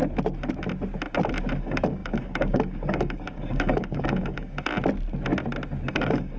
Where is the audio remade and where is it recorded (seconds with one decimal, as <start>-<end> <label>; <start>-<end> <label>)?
0.0-1.6 recorded; 1.6-4.7 remade; 4.7-5.9 recorded; 5.9-6.4 remade